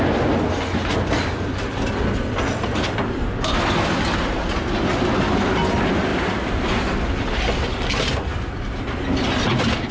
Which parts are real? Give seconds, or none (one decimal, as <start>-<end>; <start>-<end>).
0.0-9.9